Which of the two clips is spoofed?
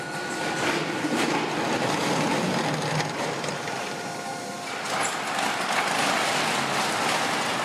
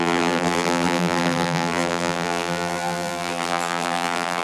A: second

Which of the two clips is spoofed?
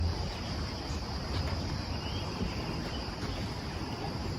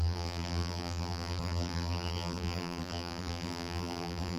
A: second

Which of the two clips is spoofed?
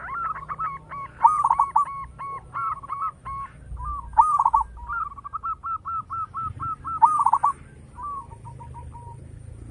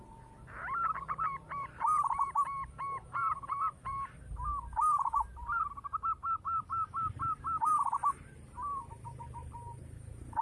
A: second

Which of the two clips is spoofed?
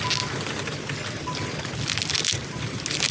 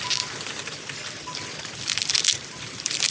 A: second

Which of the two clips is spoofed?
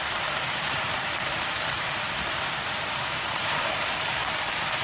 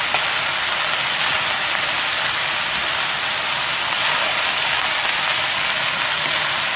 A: first